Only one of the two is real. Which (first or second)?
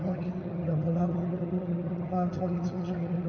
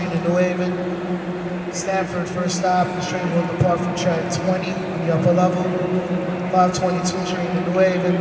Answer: second